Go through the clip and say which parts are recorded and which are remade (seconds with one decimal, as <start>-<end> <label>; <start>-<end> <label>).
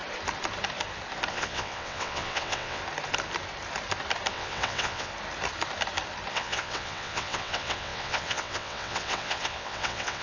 0.0-1.3 recorded; 1.3-2.8 remade; 2.8-4.3 recorded; 4.3-5.1 remade; 5.1-6.3 recorded; 6.3-10.2 remade